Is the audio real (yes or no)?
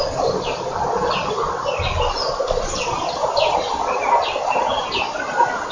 yes